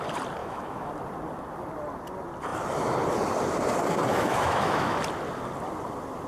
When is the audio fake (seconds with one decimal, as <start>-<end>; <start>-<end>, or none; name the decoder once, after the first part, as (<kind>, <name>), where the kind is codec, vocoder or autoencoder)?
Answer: 0.4-0.9 (autoencoder, DAC-VAE); 4.1-5.0